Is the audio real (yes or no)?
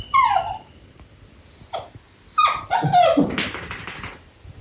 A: yes